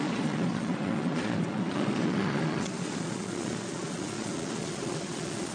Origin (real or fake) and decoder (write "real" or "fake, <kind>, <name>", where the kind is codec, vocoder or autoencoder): fake, vocoder, Vocos